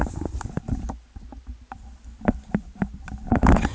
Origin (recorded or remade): recorded